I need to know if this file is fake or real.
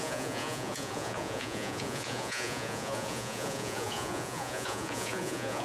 fake